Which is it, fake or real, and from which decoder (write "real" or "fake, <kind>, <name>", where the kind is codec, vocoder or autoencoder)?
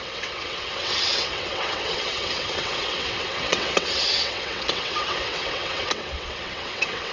fake, vocoder, WaveNeXt